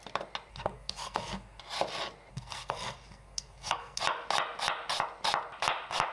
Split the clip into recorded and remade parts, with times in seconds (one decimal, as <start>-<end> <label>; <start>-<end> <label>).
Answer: 0.0-0.5 recorded; 0.5-1.6 remade; 1.6-2.3 recorded; 2.3-4.0 remade; 4.0-6.1 recorded